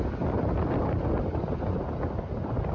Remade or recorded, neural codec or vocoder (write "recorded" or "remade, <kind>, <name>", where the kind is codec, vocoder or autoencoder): recorded